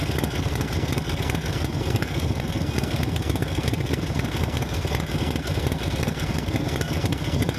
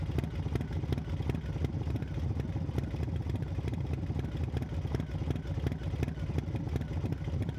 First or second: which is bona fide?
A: second